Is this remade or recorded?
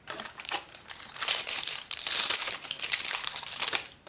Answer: remade